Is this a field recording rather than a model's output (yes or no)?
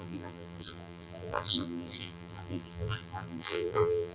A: no